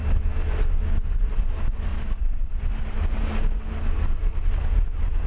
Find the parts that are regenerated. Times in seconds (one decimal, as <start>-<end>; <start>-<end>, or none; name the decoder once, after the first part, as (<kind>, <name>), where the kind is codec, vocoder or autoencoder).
1.9-2.7 (vocoder, Vocos)